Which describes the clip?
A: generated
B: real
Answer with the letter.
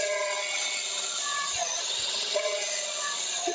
A